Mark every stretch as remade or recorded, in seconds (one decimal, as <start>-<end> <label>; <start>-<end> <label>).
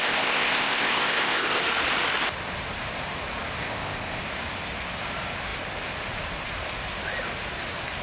0.0-1.6 remade; 1.6-3.6 recorded; 3.6-4.2 remade; 4.2-8.0 recorded